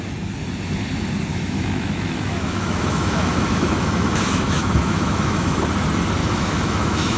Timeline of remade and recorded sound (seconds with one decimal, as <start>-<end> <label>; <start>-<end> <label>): 0.0-1.3 recorded; 1.3-5.6 remade; 5.6-6.2 recorded; 6.2-7.2 remade

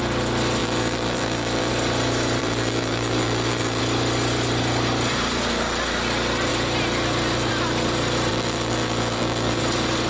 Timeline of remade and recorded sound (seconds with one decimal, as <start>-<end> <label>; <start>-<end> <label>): 0.0-0.6 recorded; 0.6-1.7 remade; 1.7-2.4 recorded; 2.4-3.8 remade; 3.8-8.3 recorded; 8.3-9.6 remade; 9.6-10.1 recorded

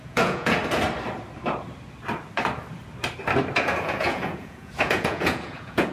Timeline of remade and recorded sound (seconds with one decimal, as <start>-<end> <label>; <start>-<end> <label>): 0.0-0.6 remade; 0.6-3.6 recorded; 3.6-5.9 remade

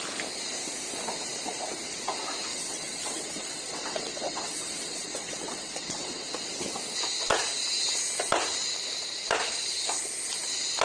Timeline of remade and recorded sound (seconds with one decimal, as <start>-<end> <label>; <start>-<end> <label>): 0.0-2.5 recorded; 2.5-6.3 remade; 6.3-10.8 recorded